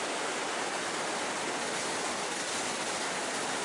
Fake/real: real